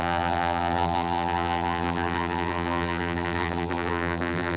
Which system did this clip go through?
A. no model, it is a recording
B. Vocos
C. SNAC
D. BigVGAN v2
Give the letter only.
D